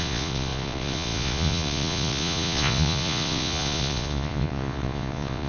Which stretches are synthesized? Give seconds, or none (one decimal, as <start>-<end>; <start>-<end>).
0.0-5.5